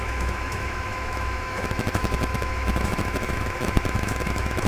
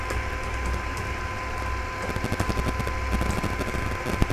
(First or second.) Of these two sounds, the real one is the second